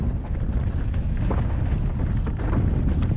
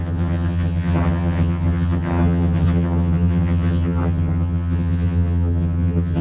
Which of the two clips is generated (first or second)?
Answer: second